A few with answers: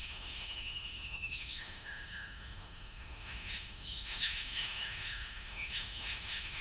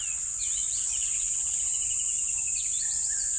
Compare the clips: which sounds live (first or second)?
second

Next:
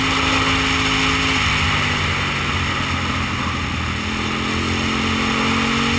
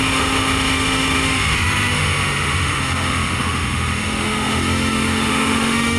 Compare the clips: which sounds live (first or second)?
first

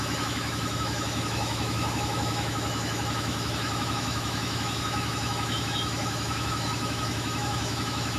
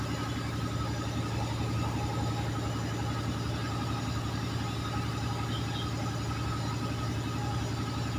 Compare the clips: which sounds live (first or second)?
second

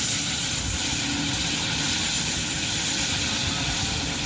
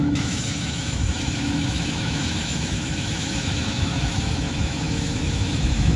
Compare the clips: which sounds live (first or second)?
first